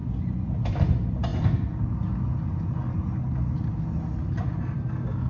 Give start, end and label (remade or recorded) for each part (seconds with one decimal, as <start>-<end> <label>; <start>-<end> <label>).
0.0-5.3 recorded